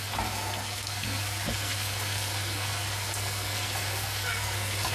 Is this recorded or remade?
remade